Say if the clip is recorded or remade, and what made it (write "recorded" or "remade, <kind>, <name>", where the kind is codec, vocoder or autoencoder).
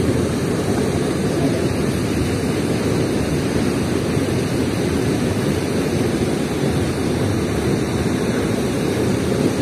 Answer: remade, vocoder, BigVGAN v2